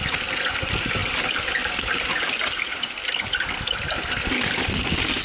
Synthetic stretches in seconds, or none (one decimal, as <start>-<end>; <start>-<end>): 1.0-2.7